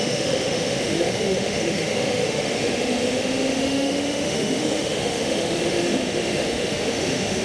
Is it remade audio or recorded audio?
remade